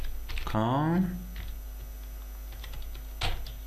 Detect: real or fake real